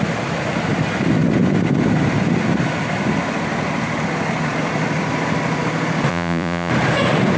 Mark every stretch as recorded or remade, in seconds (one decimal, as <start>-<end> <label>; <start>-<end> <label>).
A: 0.0-6.1 recorded; 6.1-6.7 remade; 6.7-7.4 recorded